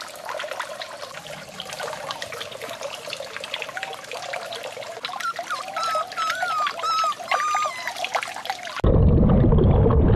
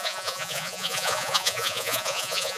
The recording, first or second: first